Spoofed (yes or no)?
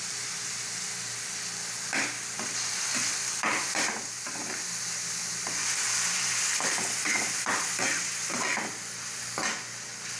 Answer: no